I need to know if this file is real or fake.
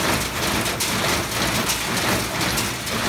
real